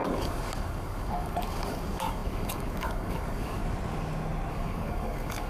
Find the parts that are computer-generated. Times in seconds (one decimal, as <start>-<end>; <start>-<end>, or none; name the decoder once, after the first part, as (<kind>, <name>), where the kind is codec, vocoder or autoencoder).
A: 0.0-3.6 (codec, DAC); 4.5-5.5